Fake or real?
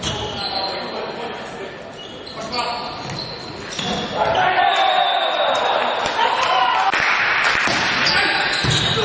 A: real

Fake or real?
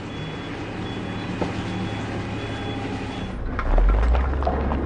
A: real